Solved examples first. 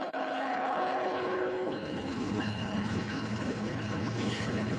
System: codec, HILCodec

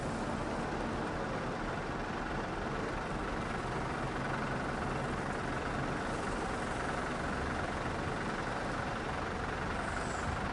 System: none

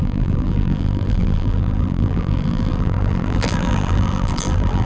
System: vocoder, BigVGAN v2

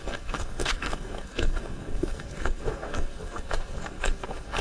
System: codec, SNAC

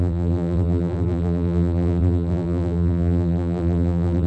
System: vocoder, BigVGAN v2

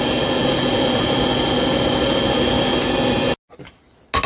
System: none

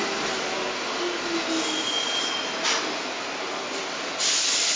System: none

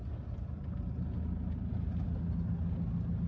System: none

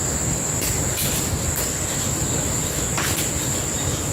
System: none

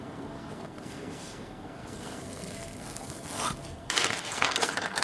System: codec, SNAC